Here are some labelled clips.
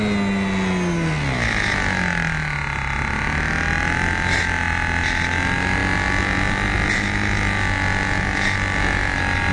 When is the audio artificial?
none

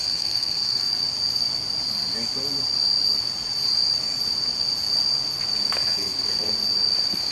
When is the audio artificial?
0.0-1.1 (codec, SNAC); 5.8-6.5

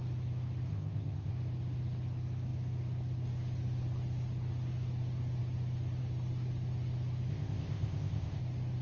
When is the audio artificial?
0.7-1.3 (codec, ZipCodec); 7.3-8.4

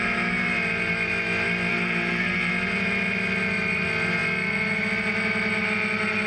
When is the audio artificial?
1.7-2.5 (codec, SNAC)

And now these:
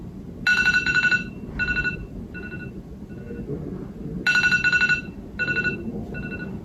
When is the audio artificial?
0.5-1.3 (vocoder, Vocos)